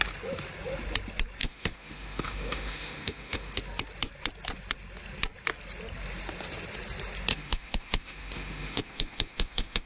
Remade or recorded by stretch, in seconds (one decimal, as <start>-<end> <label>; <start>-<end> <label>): 0.0-1.4 recorded; 1.4-3.6 remade; 3.6-7.3 recorded; 7.3-9.9 remade